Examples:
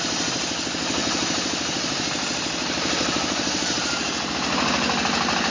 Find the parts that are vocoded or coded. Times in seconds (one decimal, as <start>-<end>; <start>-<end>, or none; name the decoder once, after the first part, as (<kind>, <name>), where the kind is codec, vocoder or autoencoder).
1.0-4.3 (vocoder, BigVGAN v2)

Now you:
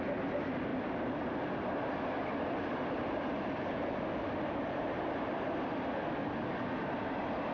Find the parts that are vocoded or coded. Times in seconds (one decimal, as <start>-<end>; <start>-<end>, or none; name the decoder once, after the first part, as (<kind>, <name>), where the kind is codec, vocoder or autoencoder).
none

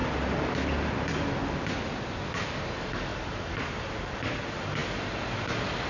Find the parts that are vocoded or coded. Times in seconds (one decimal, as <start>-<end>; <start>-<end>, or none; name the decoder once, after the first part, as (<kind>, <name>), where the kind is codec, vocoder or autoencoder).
3.1-3.9 (vocoder, BigVGAN v2)